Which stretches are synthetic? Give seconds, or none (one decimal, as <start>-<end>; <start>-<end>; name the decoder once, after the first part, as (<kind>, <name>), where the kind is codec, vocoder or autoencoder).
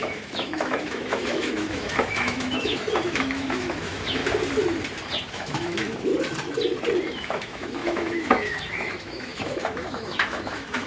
0.0-4.2 (autoencoder, DAC-VAE); 5.3-6.1; 7.1-10.9